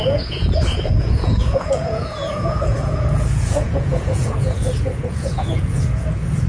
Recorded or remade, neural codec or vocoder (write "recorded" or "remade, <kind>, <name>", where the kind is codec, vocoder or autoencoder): remade, vocoder, Vocos